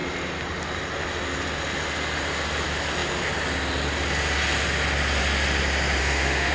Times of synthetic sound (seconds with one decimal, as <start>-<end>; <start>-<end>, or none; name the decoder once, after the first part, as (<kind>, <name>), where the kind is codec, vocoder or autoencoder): 6.0-6.5 (autoencoder, DAC-VAE)